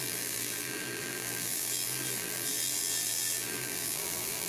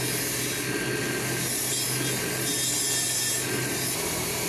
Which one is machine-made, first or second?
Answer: first